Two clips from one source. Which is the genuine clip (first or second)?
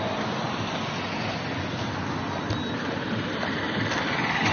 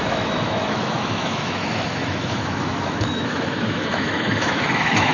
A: first